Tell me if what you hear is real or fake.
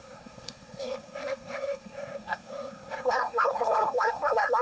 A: fake